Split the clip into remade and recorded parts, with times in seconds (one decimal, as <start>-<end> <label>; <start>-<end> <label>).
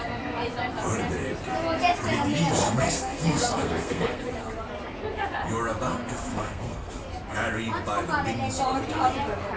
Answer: 0.0-2.6 recorded; 2.6-4.2 remade; 4.2-6.3 recorded; 6.3-7.0 remade; 7.0-9.6 recorded